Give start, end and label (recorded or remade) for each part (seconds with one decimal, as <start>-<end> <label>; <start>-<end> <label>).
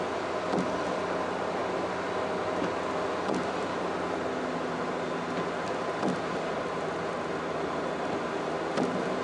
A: 0.0-9.2 recorded